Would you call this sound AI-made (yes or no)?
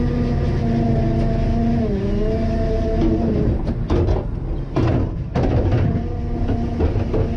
no